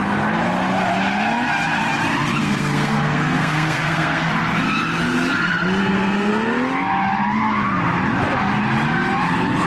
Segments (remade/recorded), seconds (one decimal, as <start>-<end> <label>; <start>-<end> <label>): 0.0-2.4 recorded; 2.4-4.3 remade; 4.3-5.8 recorded; 5.8-6.3 remade; 6.3-9.7 recorded